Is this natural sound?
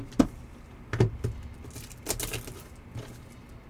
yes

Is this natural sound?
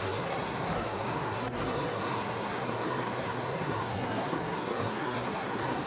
no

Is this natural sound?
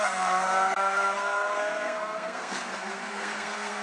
no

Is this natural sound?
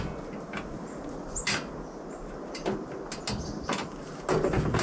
yes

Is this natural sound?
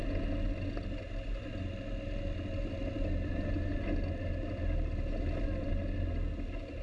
yes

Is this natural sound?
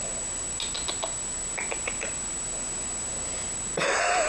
yes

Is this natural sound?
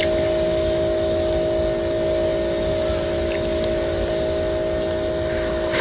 yes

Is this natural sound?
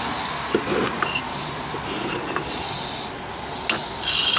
yes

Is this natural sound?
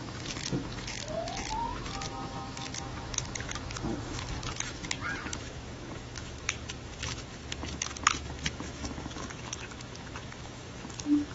no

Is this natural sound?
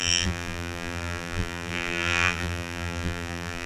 no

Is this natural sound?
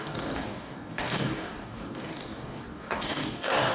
no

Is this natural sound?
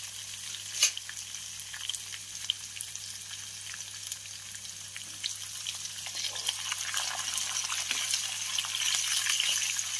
yes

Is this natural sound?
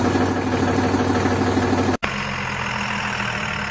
yes